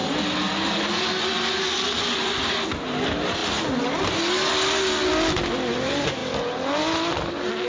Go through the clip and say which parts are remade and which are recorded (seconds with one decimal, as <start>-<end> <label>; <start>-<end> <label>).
0.0-7.7 recorded